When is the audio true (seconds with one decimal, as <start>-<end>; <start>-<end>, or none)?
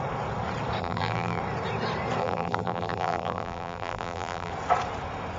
0.0-0.8; 1.4-2.2; 4.5-5.4